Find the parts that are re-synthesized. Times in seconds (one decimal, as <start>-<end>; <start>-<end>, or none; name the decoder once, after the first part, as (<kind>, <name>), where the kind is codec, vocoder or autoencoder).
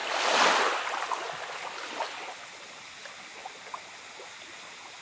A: none